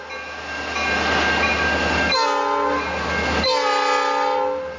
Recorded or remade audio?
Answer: recorded